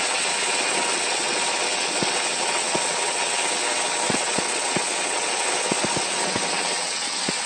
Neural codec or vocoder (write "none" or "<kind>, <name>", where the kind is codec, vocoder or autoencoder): vocoder, WaveNeXt